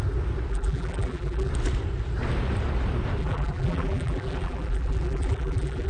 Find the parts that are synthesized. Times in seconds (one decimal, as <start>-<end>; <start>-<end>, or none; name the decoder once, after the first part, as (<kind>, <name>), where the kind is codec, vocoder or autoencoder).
0.5-1.5 (vocoder, BigVGAN v2); 3.2-5.9